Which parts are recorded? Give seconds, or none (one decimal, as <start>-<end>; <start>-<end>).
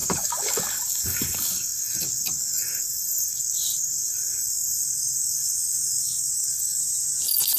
6.8-7.6